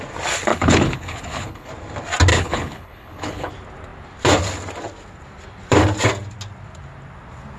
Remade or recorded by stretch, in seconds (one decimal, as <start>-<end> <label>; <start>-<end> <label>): 0.0-0.5 recorded; 0.5-1.7 remade; 1.7-2.3 recorded; 2.3-3.5 remade; 3.5-7.6 recorded